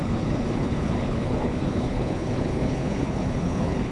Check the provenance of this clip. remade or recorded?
remade